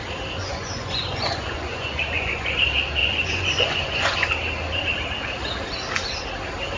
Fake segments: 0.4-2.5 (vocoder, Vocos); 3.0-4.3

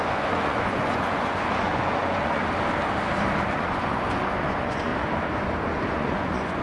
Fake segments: 0.0-2.4 (vocoder, Vocos); 3.5-4.9; 5.8-6.6

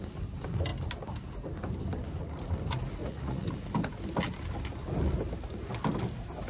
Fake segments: 3.0-3.5 (vocoder, Vocos)

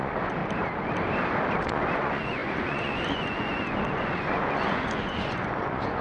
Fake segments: 0.0-0.4 (vocoder, Vocos); 1.6-6.0